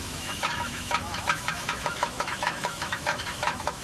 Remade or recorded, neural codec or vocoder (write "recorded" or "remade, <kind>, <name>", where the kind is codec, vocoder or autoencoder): remade, autoencoder, DAC-VAE